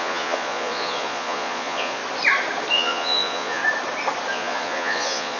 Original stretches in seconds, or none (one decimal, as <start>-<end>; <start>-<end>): 2.0-2.7; 3.6-4.3